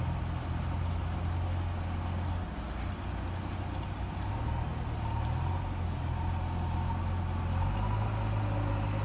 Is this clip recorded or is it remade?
recorded